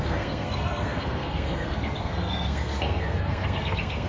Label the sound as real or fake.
fake